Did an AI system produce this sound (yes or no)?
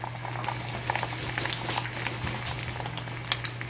no